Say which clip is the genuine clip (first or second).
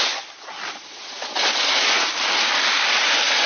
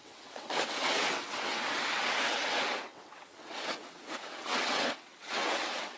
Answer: first